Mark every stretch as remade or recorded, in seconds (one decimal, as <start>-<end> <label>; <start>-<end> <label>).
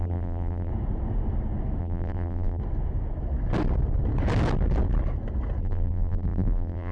0.0-0.7 remade; 0.7-1.8 recorded; 1.8-2.6 remade; 2.6-5.6 recorded; 5.6-6.9 remade